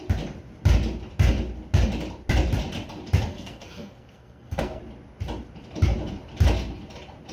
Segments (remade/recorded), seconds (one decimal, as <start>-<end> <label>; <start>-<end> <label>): 0.0-3.3 recorded; 3.3-4.8 remade; 4.8-7.3 recorded